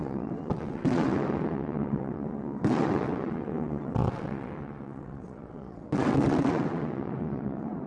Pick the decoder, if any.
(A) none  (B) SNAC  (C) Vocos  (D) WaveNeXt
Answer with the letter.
D